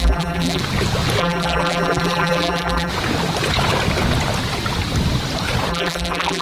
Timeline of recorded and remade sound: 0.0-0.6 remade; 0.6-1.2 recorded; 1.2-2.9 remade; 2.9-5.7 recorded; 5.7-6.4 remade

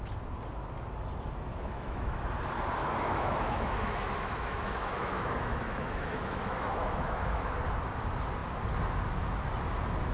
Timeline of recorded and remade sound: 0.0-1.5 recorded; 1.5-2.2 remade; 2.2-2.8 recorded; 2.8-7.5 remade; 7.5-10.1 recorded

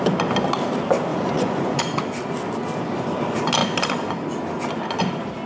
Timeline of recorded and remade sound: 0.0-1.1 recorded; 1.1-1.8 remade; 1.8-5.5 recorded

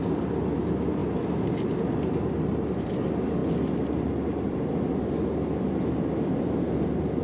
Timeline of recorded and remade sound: 0.0-7.2 recorded